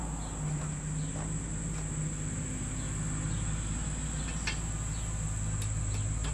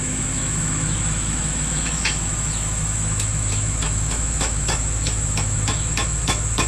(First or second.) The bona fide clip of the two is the first